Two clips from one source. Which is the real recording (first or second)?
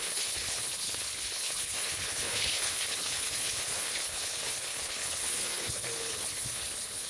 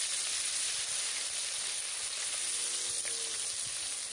second